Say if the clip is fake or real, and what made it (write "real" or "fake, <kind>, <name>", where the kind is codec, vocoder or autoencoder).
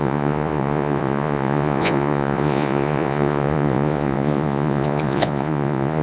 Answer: fake, vocoder, Vocos